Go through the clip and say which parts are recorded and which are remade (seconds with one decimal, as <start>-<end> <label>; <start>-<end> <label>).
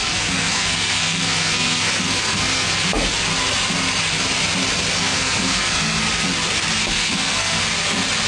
0.0-3.1 remade; 3.1-5.0 recorded; 5.0-6.0 remade; 6.0-6.8 recorded; 6.8-7.6 remade; 7.6-8.3 recorded